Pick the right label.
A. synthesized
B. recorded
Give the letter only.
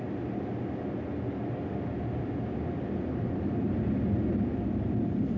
B